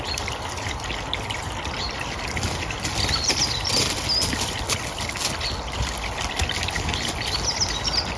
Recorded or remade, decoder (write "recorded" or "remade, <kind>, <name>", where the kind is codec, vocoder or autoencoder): recorded